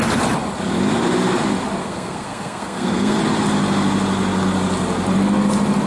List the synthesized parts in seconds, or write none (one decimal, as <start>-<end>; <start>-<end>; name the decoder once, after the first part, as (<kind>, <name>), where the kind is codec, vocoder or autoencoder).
1.8-3.2 (codec, SNAC)